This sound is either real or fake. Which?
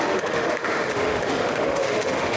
fake